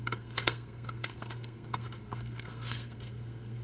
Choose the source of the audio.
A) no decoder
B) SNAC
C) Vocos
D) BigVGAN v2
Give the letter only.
B